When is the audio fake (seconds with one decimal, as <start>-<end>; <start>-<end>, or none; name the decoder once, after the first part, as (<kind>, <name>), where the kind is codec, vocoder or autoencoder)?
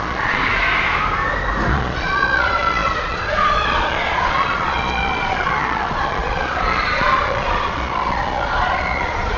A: 0.0-0.4 (vocoder, Vocos); 1.7-9.4